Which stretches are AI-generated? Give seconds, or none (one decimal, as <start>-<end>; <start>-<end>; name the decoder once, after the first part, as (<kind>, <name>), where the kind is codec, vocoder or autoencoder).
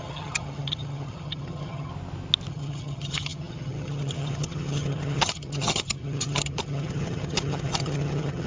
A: 0.0-1.9 (vocoder, HiFi-GAN); 2.5-8.5